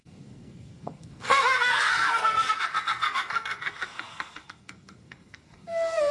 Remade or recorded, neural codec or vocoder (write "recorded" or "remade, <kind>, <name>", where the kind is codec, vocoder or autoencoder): remade, codec, SNAC